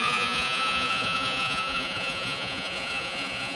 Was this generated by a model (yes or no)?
yes